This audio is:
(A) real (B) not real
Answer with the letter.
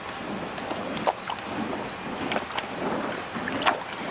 A